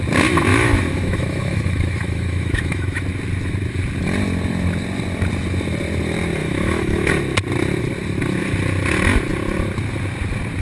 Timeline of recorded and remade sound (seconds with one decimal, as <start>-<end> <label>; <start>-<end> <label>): 0.0-0.5 recorded; 0.5-3.0 remade; 3.0-6.4 recorded; 6.4-7.1 remade; 7.1-10.6 recorded